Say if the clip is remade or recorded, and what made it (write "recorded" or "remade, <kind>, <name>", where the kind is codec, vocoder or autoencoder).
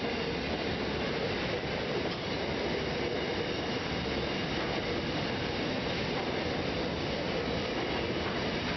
recorded